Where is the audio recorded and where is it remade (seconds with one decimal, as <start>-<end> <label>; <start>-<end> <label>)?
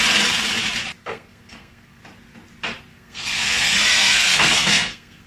0.0-1.0 recorded; 1.0-2.0 remade; 2.0-2.9 recorded; 2.9-5.3 remade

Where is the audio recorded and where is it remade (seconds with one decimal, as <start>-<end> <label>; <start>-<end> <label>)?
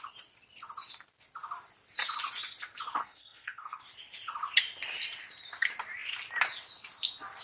0.0-3.0 recorded; 3.0-3.8 remade; 3.8-7.4 recorded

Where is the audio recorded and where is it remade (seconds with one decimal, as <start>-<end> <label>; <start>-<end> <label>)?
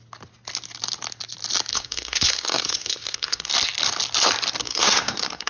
0.0-1.7 recorded; 1.7-3.5 remade; 3.5-4.6 recorded; 4.6-5.5 remade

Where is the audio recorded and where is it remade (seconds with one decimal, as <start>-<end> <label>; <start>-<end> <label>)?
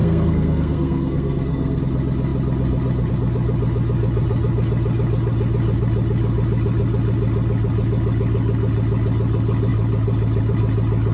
0.0-1.8 remade; 1.8-11.1 recorded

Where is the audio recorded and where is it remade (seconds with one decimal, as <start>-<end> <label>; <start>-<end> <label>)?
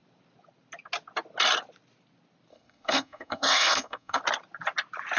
0.0-2.5 recorded; 2.5-4.2 remade; 4.2-5.2 recorded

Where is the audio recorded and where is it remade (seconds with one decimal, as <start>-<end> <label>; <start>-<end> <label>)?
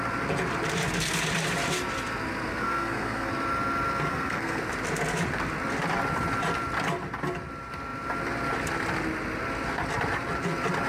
0.0-2.5 recorded; 2.5-3.3 remade; 3.3-4.1 recorded; 4.1-4.6 remade; 4.6-10.9 recorded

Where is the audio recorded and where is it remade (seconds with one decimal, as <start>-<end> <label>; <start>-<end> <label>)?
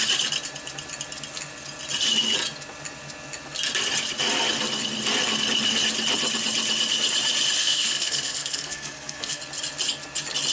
0.0-7.6 recorded; 7.6-9.4 remade; 9.4-10.5 recorded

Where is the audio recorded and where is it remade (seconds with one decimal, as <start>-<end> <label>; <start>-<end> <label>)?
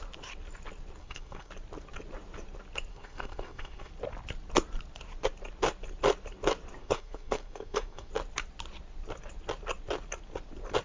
0.0-1.0 recorded; 1.0-1.5 remade; 1.5-2.9 recorded; 2.9-3.9 remade; 3.9-6.8 recorded; 6.8-8.1 remade; 8.1-10.8 recorded